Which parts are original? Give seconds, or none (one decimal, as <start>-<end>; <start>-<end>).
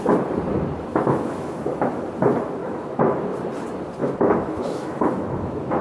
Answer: 0.0-0.9; 1.9-2.6; 3.2-4.0